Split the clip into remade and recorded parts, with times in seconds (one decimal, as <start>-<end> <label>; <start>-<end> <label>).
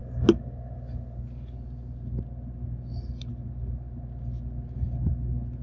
0.0-5.6 recorded